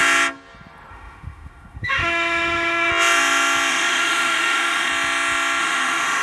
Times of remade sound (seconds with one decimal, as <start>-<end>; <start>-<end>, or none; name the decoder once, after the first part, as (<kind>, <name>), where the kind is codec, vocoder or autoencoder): 0.9-2.9 (autoencoder, DAC-VAE); 3.7-4.9; 5.6-6.2